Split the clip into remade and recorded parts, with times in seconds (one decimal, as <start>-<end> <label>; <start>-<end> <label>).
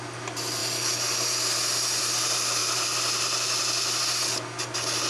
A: 0.0-5.1 recorded